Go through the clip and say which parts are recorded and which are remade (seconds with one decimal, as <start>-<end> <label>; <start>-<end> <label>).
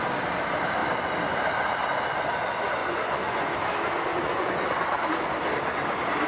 0.0-2.8 recorded; 2.8-3.5 remade; 3.5-4.1 recorded; 4.1-5.1 remade; 5.1-6.3 recorded